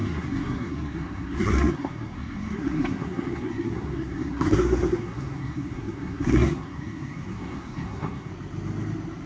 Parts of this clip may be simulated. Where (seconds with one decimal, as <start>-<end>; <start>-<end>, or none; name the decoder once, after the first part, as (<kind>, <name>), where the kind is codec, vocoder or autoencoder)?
0.0-8.3 (codec, SNAC)

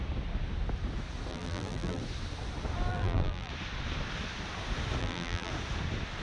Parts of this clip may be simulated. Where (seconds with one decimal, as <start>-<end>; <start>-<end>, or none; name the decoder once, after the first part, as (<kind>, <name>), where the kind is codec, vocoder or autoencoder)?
1.3-2.0 (vocoder, BigVGAN v2); 2.9-3.5; 5.0-5.5